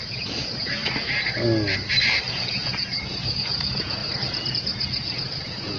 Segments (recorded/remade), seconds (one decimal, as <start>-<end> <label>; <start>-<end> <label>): 0.0-0.8 remade; 0.8-2.3 recorded; 2.3-4.0 remade; 4.0-4.5 recorded; 4.5-5.8 remade

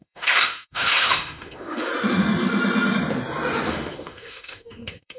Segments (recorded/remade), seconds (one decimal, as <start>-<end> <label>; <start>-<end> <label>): 0.0-1.9 remade; 1.9-3.7 recorded; 3.7-5.2 remade

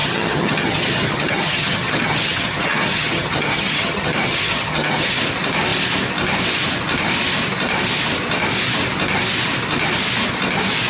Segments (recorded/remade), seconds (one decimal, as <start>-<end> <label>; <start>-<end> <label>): 0.0-5.1 remade; 5.1-10.9 recorded

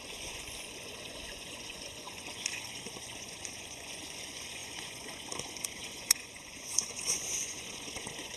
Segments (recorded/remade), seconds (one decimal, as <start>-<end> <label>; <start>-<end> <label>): 0.0-8.4 remade

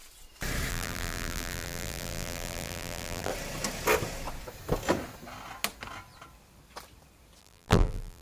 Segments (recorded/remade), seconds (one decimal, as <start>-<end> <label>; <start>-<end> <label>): 0.0-0.7 recorded; 0.7-3.3 remade; 3.3-7.4 recorded; 7.4-8.2 remade

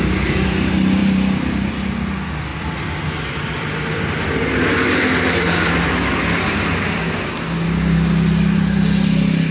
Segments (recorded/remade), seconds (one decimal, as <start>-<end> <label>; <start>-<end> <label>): 0.0-1.0 recorded; 1.0-1.7 remade; 1.7-2.5 recorded; 2.5-4.3 remade; 4.3-9.5 recorded

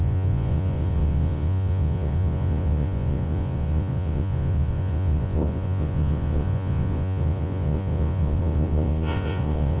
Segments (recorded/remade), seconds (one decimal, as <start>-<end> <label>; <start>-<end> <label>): 0.0-9.8 remade